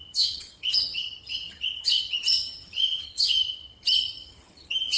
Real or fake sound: fake